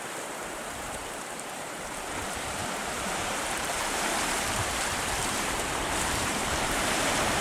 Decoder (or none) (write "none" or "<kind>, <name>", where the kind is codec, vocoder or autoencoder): vocoder, BigVGAN v2